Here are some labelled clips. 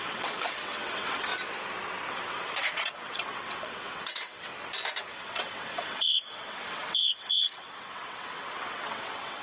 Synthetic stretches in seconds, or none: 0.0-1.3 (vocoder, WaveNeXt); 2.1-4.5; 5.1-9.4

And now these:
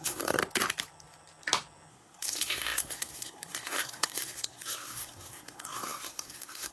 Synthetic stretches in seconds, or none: 0.0-0.4 (codec, SNAC); 1.9-6.7

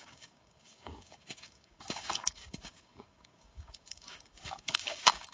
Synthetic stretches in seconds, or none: 0.0-5.3 (codec, DAC)

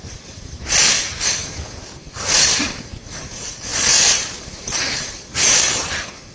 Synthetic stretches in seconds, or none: none

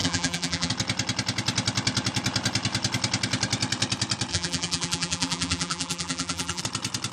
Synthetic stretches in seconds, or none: 0.0-0.7 (vocoder, BigVGAN v2); 4.3-6.6

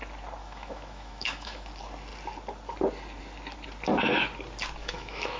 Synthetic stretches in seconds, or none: 0.4-1.7 (autoencoder, DAC-VAE); 4.8-5.4